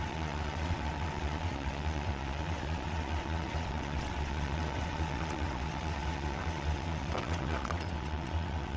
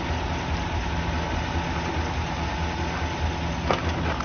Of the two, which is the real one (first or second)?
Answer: second